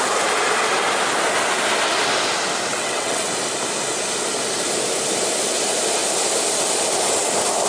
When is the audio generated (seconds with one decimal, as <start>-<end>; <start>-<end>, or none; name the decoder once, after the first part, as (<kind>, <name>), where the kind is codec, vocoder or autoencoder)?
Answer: 2.7-3.3 (vocoder, WaveNeXt)